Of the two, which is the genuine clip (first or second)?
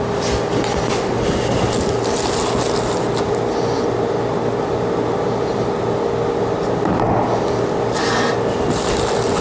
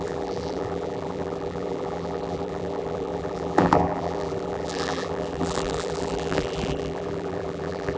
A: first